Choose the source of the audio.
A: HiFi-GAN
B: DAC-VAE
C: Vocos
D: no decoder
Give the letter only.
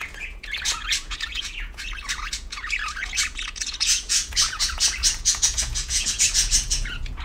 C